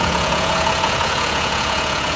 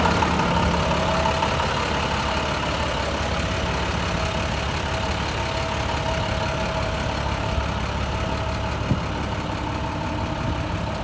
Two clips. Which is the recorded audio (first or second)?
second